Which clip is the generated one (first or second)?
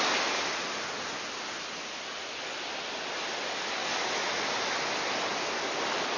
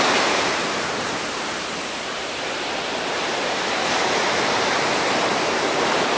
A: second